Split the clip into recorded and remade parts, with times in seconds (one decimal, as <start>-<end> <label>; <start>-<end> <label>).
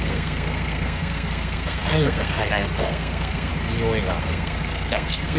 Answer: 0.0-3.5 remade; 3.5-4.2 recorded; 4.2-5.4 remade